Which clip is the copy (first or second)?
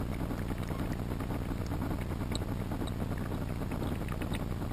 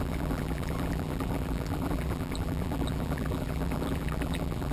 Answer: second